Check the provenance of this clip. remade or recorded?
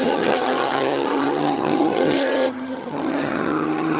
remade